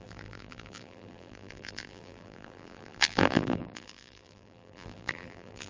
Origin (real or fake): fake